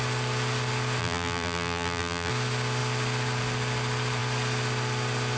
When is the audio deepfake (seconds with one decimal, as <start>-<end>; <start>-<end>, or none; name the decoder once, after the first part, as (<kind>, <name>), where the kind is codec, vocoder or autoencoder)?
1.0-2.3 (vocoder, BigVGAN v2)